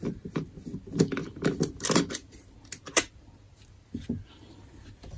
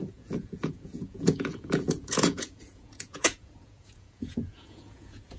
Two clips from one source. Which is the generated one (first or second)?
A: second